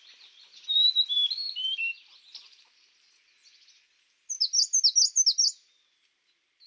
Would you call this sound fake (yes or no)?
no